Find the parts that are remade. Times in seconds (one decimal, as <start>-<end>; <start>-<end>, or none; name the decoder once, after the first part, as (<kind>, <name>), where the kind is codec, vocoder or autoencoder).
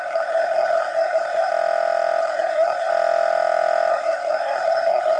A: 0.0-1.5 (codec, SNAC); 2.2-2.9; 3.9-5.2